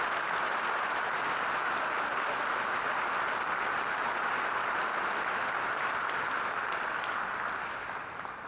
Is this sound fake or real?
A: real